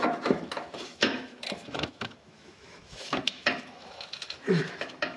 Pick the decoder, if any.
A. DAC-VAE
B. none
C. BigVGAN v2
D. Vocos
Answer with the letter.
A